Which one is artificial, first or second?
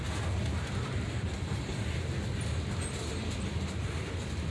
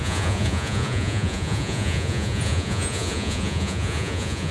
second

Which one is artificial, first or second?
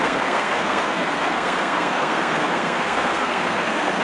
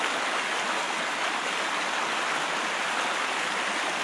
first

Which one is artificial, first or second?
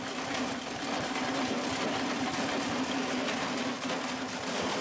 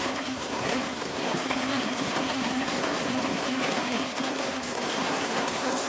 second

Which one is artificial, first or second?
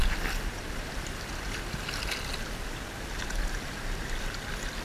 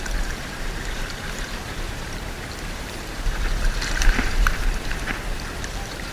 second